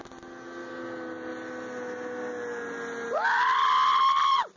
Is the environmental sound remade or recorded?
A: recorded